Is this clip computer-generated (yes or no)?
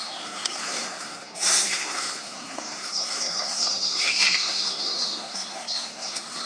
yes